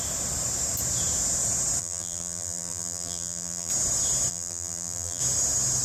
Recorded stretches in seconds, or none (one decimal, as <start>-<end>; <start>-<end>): 0.0-1.8; 3.7-4.3; 5.2-5.8